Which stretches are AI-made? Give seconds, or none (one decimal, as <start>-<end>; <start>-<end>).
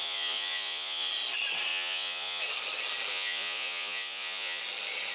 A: 0.0-1.1; 1.7-2.4; 3.1-4.6